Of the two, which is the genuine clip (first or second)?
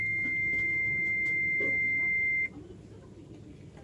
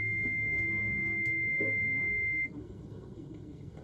first